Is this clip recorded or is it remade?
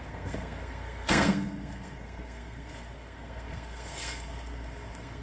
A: remade